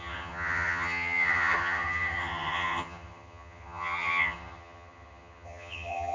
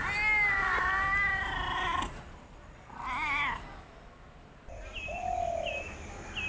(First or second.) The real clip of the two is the second